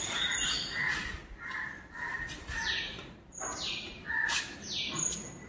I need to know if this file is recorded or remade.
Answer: recorded